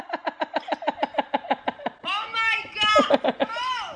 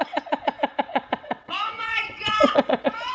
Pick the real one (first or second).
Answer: first